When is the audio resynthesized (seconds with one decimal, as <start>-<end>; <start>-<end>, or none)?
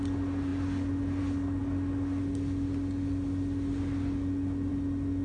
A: none